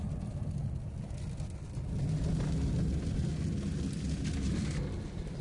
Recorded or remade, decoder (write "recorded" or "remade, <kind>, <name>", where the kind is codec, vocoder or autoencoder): recorded